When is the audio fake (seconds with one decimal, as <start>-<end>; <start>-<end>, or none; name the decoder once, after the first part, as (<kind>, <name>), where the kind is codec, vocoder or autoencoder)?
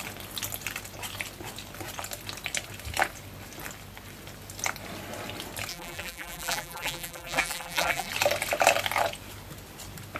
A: 5.7-8.1 (vocoder, BigVGAN v2)